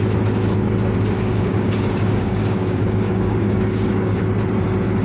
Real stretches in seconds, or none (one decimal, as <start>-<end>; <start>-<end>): 0.0-1.3; 4.3-5.0